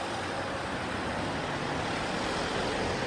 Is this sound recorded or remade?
recorded